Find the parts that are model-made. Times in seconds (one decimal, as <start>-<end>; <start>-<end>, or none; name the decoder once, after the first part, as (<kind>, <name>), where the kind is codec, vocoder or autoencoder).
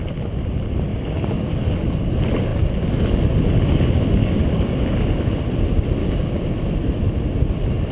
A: 0.9-1.6 (codec, DAC); 4.2-5.3; 6.0-6.5